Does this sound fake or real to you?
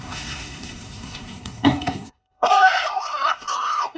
fake